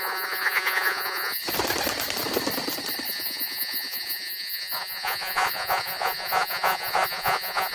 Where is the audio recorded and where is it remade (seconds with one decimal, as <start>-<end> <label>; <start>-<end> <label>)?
0.0-1.4 remade; 1.4-3.1 recorded; 3.1-7.7 remade